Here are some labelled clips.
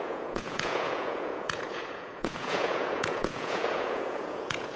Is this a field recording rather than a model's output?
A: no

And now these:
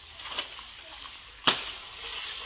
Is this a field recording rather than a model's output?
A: yes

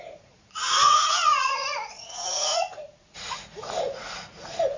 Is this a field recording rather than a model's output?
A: no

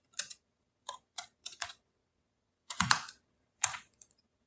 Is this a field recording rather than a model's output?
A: no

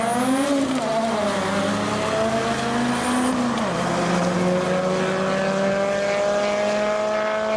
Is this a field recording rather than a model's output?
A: yes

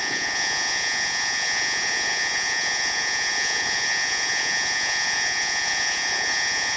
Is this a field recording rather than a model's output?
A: no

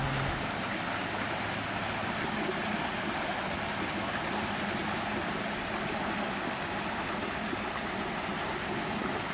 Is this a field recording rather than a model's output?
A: yes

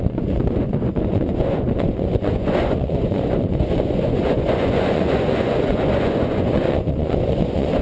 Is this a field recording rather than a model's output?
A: no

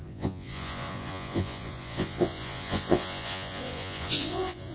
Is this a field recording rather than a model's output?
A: no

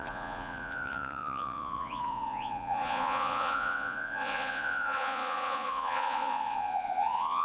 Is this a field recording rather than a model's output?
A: no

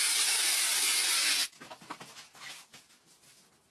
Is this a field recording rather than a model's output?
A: yes